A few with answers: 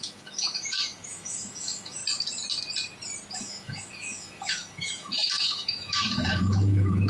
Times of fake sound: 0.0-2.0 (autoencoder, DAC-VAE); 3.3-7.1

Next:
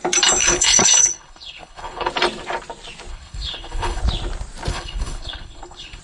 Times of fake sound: 0.4-2.1 (codec, HILCodec); 3.1-4.0; 4.7-6.0

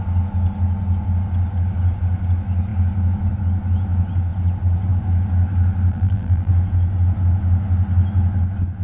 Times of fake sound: 5.9-6.5 (vocoder, BigVGAN v2)

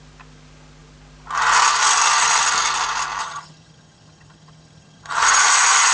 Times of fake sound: 3.2-5.4 (vocoder, HiFi-GAN)

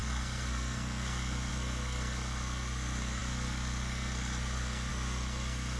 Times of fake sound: 0.0-5.8 (codec, SNAC)

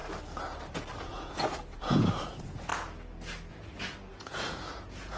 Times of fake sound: 1.1-2.7 (vocoder, Vocos); 3.5-5.2